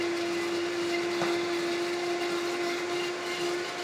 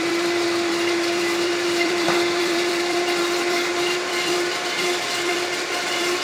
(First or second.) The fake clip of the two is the second